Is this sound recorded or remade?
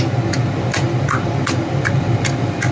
recorded